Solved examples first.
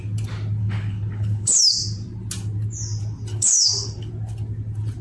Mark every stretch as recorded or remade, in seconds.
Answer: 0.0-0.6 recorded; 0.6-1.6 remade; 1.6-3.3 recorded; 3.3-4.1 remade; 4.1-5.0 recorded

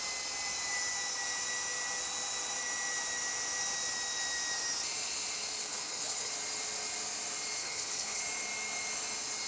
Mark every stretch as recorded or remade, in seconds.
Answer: 0.0-5.6 recorded; 5.6-6.3 remade; 6.3-7.6 recorded; 7.6-8.2 remade; 8.2-9.5 recorded

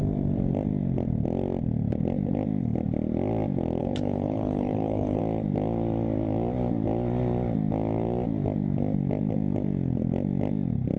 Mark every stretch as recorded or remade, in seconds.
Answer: 0.0-3.8 recorded; 3.8-5.2 remade; 5.2-11.0 recorded

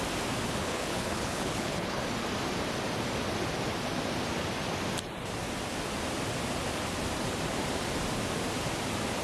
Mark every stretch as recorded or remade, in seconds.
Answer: 0.0-0.6 recorded; 0.6-2.0 remade; 2.0-9.2 recorded